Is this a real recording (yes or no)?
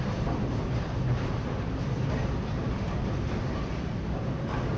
yes